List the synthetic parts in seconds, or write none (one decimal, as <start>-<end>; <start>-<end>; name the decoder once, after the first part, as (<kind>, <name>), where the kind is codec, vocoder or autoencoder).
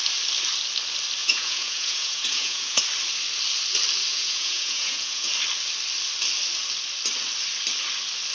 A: 1.2-2.8 (vocoder, Vocos); 4.1-5.3